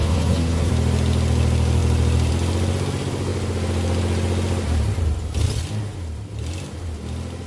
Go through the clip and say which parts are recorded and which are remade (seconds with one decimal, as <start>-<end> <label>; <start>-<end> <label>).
0.0-0.7 remade; 0.7-7.5 recorded